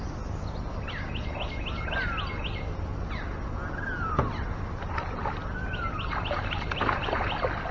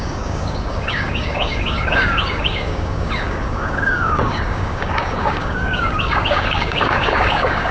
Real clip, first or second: first